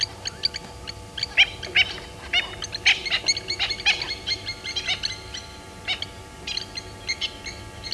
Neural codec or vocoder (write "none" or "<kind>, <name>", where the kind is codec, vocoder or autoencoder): none